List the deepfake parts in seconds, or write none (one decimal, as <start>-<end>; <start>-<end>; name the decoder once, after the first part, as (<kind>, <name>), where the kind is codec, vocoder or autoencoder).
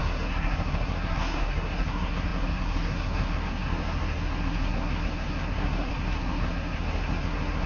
0.0-7.7 (codec, SNAC)